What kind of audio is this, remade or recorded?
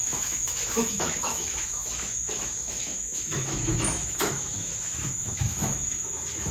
remade